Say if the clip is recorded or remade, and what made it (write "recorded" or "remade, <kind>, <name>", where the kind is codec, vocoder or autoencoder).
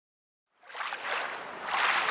recorded